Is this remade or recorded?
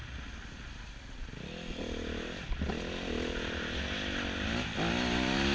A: recorded